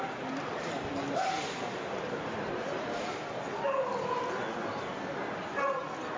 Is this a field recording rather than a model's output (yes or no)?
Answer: yes